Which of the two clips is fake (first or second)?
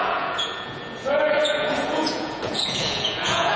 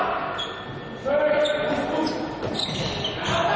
first